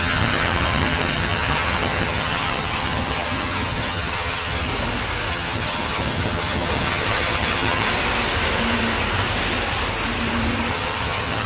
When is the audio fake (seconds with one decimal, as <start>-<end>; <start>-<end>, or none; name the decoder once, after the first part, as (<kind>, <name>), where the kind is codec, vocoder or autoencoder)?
0.0-4.7 (vocoder, HiFi-GAN); 5.3-7.9; 10.7-11.5